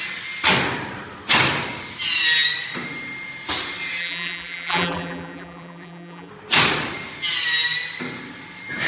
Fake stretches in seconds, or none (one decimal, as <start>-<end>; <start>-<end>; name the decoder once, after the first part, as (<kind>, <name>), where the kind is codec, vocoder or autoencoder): 4.0-6.3 (vocoder, BigVGAN v2)